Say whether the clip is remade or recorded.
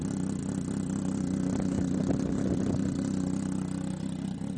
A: recorded